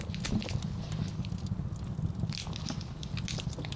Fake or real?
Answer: real